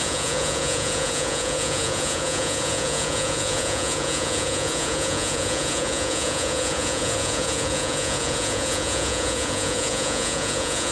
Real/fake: fake